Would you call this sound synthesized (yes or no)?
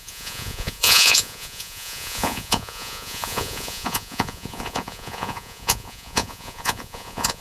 yes